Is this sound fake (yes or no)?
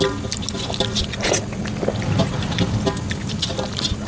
no